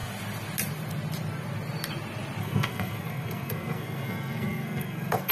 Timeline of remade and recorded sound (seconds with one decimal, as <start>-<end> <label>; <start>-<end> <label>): 0.0-2.4 recorded; 2.4-5.3 remade